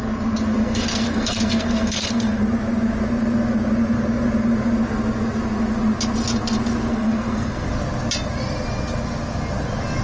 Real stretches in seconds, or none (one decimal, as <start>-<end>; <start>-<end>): 0.0-0.5; 2.4-6.9; 7.7-10.0